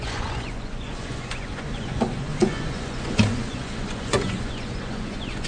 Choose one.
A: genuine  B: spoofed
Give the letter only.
B